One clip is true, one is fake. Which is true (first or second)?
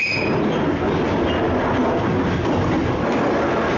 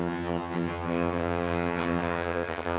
first